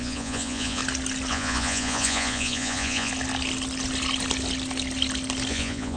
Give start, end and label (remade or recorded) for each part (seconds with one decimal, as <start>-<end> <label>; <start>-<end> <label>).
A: 0.0-0.8 remade; 0.8-1.3 recorded; 1.3-3.1 remade; 3.1-5.5 recorded; 5.5-6.0 remade